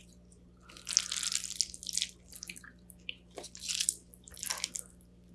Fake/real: real